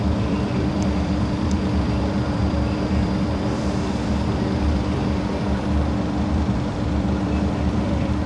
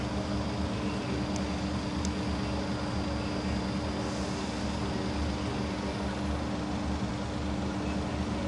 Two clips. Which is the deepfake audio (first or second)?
first